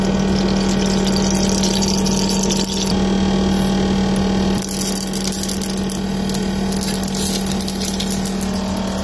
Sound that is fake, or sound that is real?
real